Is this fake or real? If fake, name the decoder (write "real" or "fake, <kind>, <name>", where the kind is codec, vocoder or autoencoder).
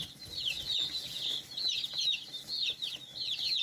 real